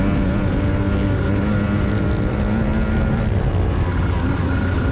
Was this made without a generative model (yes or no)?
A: yes